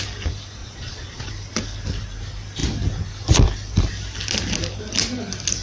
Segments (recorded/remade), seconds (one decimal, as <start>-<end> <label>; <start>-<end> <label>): 0.0-0.6 recorded; 0.6-1.3 remade; 1.3-5.6 recorded